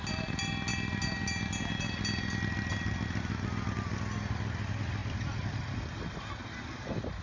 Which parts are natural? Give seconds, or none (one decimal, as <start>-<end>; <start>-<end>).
0.0-7.2